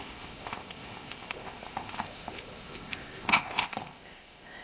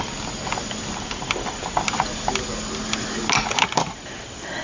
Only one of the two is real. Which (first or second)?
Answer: second